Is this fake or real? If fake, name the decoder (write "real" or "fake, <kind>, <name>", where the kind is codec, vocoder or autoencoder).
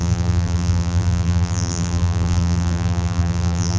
fake, vocoder, BigVGAN v2